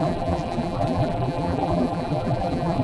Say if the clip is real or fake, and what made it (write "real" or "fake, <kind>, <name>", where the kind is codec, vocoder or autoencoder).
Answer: fake, vocoder, BigVGAN v2